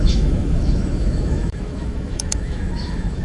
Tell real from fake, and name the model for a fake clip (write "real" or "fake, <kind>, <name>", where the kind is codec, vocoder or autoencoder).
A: fake, autoencoder, DAC-VAE